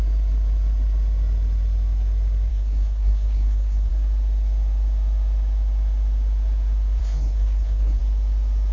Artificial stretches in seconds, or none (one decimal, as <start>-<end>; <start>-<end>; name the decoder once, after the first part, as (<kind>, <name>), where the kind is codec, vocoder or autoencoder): 2.5-3.9 (codec, SNAC); 7.0-8.0